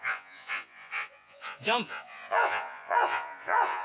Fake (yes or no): yes